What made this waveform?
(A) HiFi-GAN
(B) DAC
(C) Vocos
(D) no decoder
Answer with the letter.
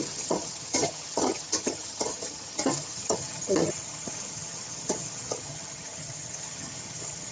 A